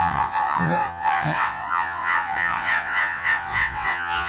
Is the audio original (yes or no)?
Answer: no